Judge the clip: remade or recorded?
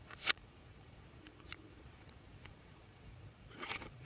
remade